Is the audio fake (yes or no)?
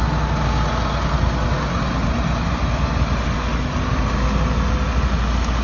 no